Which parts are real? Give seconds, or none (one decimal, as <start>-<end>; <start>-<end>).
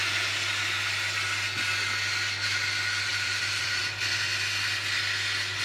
0.0-3.1; 3.8-5.6